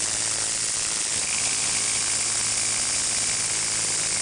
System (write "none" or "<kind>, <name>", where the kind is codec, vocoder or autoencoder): none